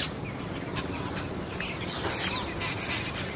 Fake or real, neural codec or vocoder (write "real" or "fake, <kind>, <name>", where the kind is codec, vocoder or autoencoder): real